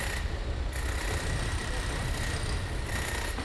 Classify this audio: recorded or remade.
recorded